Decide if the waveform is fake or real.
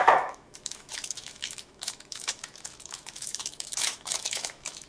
fake